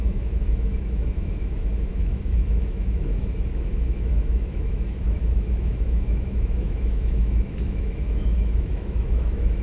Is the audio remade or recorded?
remade